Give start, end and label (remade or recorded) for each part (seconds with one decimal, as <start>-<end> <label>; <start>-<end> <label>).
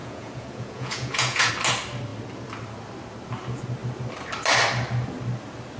0.0-1.5 remade; 1.5-5.8 recorded